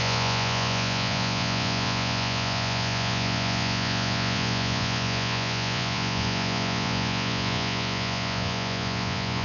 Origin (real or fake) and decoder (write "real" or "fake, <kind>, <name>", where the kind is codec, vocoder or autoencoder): fake, vocoder, Vocos